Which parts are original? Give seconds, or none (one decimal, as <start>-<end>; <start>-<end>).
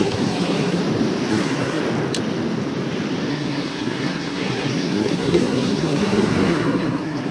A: 0.8-1.3; 1.8-3.3